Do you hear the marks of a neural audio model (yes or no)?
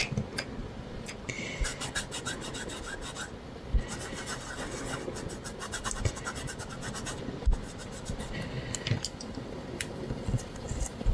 no